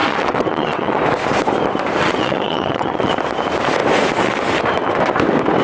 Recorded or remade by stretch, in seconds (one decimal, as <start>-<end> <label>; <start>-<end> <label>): 0.0-1.0 remade; 1.0-2.0 recorded; 2.0-3.1 remade; 3.1-5.6 recorded